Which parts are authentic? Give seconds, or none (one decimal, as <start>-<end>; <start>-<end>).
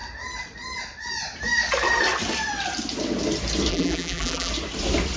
0.0-3.7; 4.5-5.2